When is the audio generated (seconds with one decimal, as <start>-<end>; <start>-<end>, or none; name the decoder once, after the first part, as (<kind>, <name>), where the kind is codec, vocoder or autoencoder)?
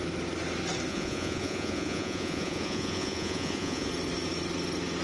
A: 0.9-3.9 (vocoder, Vocos)